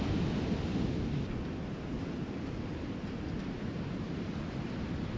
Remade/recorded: recorded